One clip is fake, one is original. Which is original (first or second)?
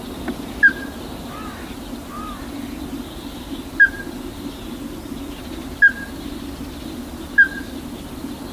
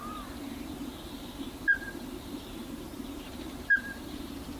first